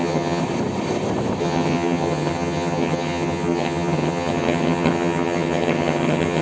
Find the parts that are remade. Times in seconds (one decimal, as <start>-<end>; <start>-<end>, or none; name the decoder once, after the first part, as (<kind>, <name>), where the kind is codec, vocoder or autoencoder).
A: 0.0-0.4 (vocoder, HiFi-GAN); 1.4-6.4